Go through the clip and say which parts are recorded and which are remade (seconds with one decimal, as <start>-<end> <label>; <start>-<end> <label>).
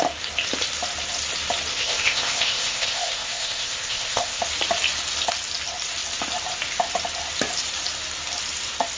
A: 0.0-1.7 recorded; 1.7-4.4 remade; 4.4-9.0 recorded